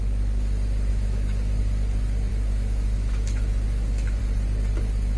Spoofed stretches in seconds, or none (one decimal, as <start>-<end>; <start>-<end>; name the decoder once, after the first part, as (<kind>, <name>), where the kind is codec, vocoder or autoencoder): 0.9-1.6 (autoencoder, DAC-VAE); 2.3-4.2